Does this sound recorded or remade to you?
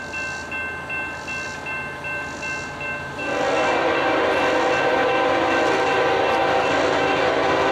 recorded